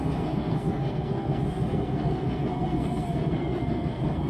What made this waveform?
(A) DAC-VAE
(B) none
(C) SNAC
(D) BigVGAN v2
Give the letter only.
C